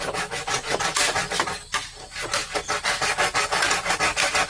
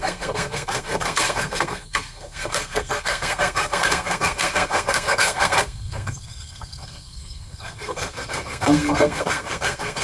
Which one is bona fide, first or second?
first